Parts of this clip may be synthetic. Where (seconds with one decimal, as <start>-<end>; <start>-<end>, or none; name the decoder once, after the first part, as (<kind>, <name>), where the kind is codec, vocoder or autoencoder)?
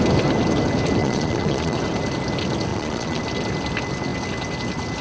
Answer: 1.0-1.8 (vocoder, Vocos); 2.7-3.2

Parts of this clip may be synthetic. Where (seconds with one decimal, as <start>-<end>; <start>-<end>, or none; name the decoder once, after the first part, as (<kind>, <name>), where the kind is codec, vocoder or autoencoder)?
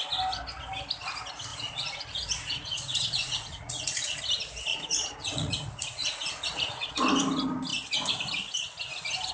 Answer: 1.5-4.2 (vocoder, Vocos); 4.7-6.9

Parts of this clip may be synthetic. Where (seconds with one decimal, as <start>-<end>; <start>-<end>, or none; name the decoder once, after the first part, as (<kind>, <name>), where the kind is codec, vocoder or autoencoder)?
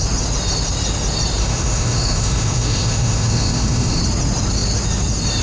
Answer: 1.4-4.0 (autoencoder, DAC-VAE)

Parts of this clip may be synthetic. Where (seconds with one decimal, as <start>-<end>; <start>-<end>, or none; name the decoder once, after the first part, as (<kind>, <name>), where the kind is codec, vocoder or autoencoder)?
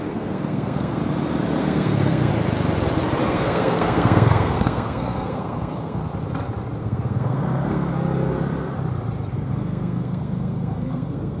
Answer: 0.0-1.0 (codec, SNAC); 1.6-2.3; 3.2-6.0; 6.8-7.9; 9.3-11.4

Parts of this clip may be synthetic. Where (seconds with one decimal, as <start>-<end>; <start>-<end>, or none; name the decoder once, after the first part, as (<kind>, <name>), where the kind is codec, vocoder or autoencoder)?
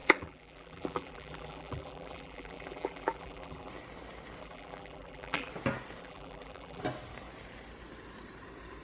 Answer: 0.0-3.7 (vocoder, BigVGAN v2); 4.4-5.5; 6.0-6.8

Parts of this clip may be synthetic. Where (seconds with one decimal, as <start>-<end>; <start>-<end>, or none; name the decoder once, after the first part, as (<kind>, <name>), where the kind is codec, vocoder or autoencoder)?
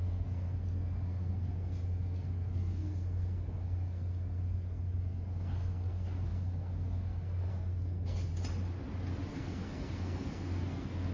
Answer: 0.0-8.3 (codec, SNAC); 9.3-11.1